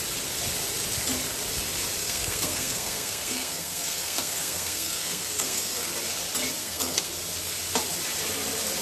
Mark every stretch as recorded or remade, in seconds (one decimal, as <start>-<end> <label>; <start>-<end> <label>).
0.0-2.0 recorded; 2.0-5.9 remade; 5.9-6.6 recorded; 6.6-7.1 remade; 7.1-8.8 recorded